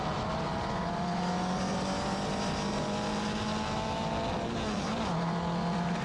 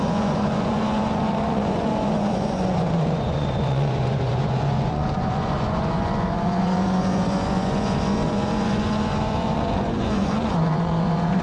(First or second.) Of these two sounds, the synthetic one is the second